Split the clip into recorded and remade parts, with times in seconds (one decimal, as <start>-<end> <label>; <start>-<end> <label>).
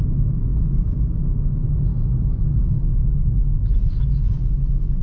0.0-0.5 recorded; 0.5-1.3 remade; 1.3-5.0 recorded